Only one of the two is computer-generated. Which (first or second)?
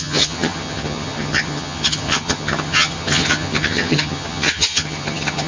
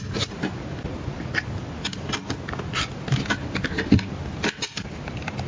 first